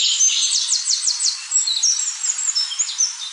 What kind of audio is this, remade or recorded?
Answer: recorded